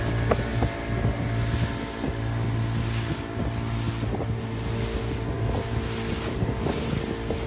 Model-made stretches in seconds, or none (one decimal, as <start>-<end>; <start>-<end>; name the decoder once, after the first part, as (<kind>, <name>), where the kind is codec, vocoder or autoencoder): none